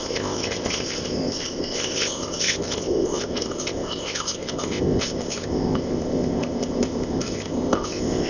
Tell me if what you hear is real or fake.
fake